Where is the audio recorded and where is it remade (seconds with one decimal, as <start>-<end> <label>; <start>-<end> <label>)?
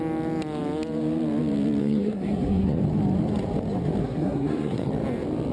0.0-1.8 recorded; 1.8-2.8 remade; 2.8-4.0 recorded; 4.0-4.9 remade; 4.9-5.5 recorded